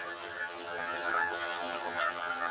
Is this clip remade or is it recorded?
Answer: remade